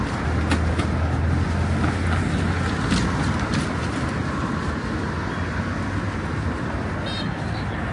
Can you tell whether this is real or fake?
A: real